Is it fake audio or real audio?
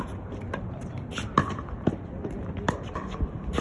fake